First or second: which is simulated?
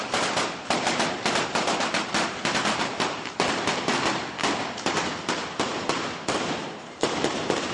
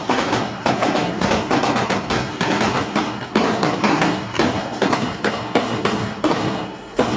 second